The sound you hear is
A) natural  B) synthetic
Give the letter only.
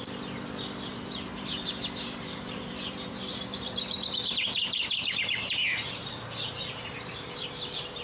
B